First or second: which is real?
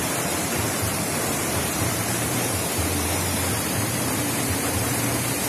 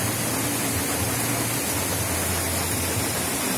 second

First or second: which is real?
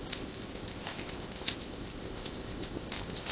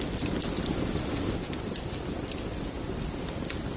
second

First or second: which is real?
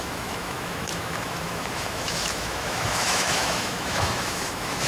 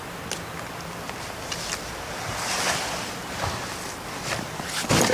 second